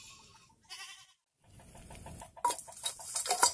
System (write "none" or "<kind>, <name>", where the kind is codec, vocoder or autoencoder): none